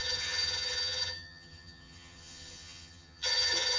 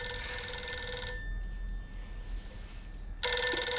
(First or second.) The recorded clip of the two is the second